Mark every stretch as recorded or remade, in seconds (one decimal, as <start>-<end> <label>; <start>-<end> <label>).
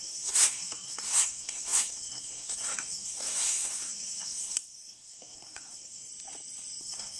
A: 0.0-6.1 remade; 6.1-6.8 recorded; 6.8-7.2 remade